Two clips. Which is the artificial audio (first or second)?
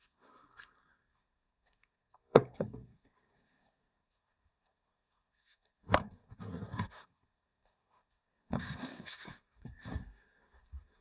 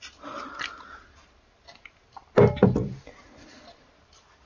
first